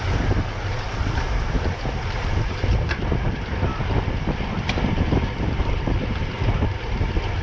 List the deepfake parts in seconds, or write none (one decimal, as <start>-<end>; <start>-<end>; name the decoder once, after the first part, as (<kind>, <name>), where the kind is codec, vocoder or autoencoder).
0.0-3.7 (vocoder, BigVGAN v2); 4.9-7.4

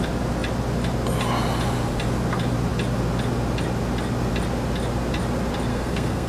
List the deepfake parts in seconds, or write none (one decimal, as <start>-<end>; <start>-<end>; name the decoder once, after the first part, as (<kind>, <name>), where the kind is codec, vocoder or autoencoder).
5.7-6.3 (codec, SNAC)